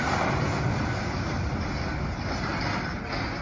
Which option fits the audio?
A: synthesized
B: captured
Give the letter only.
B